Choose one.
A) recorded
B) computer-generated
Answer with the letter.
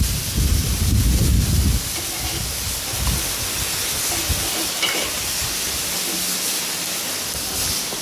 A